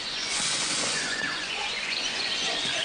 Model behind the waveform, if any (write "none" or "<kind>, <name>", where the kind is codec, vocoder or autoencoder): vocoder, Vocos